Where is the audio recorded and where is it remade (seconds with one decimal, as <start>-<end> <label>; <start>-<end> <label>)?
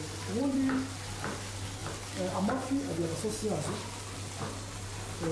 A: 0.0-5.3 recorded